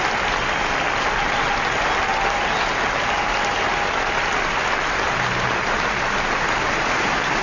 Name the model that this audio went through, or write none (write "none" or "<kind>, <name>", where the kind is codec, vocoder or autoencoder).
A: none